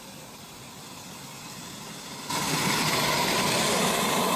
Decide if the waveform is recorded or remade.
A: recorded